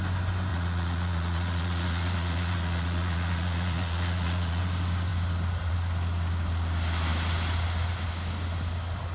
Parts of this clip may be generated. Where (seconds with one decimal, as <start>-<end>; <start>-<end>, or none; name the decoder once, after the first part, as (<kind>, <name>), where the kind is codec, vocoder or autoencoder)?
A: 0.5-4.6 (vocoder, Vocos)